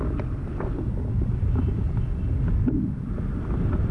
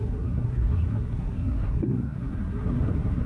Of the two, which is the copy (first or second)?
second